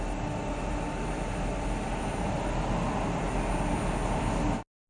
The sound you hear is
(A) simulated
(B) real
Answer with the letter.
B